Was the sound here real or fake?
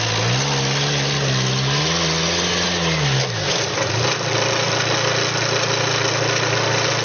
real